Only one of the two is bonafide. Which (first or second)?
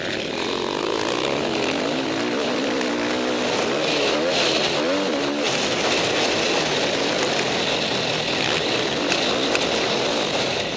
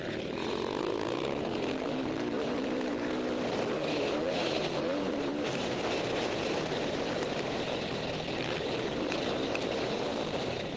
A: first